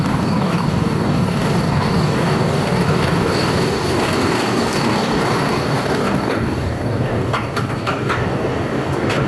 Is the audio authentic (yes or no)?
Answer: no